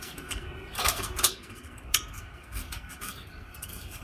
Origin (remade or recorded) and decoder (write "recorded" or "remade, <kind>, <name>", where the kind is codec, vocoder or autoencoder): remade, codec, SNAC